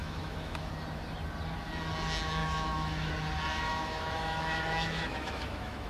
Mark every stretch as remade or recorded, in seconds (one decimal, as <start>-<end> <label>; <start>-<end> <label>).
0.0-0.7 remade; 0.7-2.4 recorded; 2.4-3.1 remade; 3.1-3.5 recorded; 3.5-5.9 remade